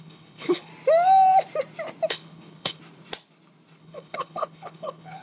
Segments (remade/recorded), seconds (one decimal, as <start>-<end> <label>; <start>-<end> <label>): 0.0-0.7 remade; 0.7-2.1 recorded; 2.1-2.8 remade; 2.8-3.8 recorded; 3.8-5.2 remade